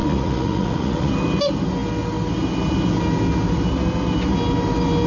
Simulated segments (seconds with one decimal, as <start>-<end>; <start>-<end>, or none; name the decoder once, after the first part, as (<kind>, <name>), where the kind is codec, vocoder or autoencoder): 0.0-1.1 (vocoder, Vocos)